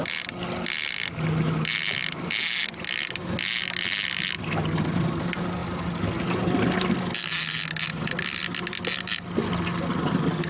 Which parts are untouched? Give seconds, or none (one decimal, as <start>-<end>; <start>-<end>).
0.0-10.5